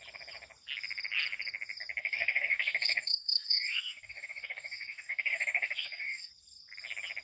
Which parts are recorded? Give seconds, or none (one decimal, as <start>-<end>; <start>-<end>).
0.0-2.0; 6.3-7.2